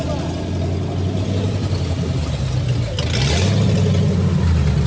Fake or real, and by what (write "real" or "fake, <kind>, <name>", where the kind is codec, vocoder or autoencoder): real